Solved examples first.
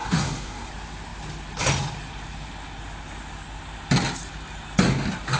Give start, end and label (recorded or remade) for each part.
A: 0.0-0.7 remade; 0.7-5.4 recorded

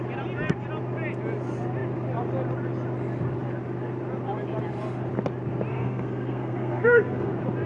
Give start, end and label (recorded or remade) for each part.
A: 0.0-5.7 recorded; 5.7-7.3 remade; 7.3-7.7 recorded

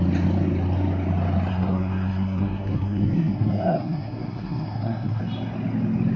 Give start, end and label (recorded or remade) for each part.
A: 0.0-1.5 recorded; 1.5-5.2 remade; 5.2-6.2 recorded

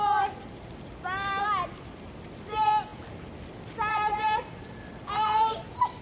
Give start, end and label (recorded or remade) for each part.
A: 0.0-6.0 recorded

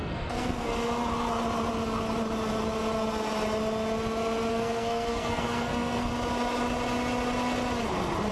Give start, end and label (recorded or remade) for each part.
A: 0.0-0.7 remade; 0.7-4.5 recorded; 4.5-6.1 remade; 6.1-8.3 recorded